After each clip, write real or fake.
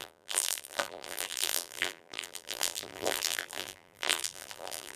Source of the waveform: fake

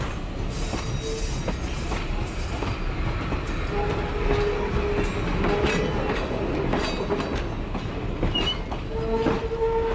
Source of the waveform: real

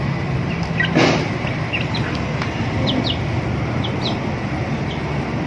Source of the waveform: fake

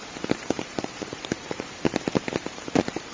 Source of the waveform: fake